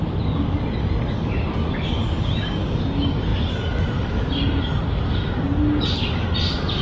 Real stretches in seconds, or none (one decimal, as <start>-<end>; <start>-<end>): 0.0-6.8